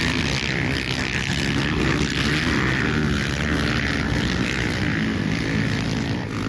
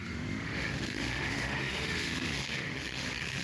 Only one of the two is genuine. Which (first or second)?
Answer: first